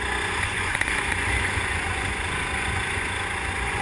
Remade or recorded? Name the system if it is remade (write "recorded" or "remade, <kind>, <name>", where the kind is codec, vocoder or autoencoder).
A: remade, vocoder, Vocos